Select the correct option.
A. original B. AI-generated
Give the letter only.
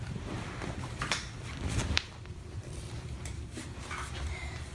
B